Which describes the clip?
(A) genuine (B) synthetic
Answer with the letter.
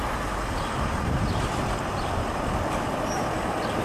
A